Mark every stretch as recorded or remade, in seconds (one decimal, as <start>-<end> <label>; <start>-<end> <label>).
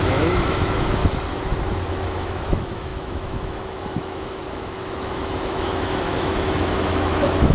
0.0-1.0 remade; 1.0-1.9 recorded; 1.9-7.5 remade